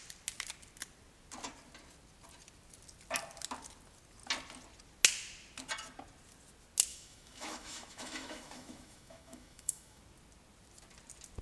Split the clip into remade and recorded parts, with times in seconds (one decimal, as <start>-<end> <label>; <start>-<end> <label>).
0.0-6.9 recorded; 6.9-10.0 remade; 10.0-11.4 recorded